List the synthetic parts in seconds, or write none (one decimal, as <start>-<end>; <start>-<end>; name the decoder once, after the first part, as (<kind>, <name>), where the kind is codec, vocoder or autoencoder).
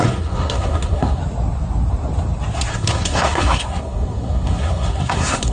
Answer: 0.0-1.2 (codec, SNAC); 2.7-5.5